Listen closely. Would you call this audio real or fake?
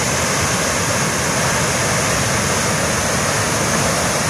real